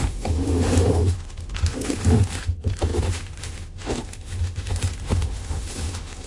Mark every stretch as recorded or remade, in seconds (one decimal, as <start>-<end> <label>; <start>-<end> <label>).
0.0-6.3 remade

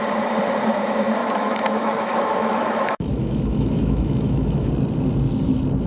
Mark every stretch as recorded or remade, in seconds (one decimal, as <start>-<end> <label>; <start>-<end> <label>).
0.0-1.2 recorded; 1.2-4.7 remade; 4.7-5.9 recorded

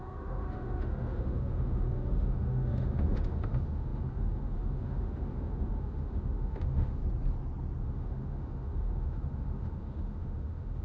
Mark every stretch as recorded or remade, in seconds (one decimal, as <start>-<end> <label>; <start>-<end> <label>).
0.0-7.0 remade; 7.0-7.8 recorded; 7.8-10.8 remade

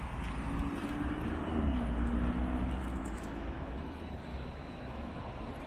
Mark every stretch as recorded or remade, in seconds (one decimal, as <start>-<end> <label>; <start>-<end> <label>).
0.0-2.9 recorded; 2.9-3.8 remade; 3.8-4.3 recorded; 4.3-5.2 remade; 5.2-5.7 recorded

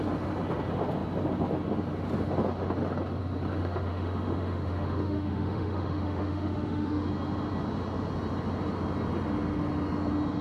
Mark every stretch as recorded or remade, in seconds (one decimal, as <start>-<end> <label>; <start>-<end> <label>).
0.0-3.6 recorded; 3.6-7.1 remade; 7.1-10.4 recorded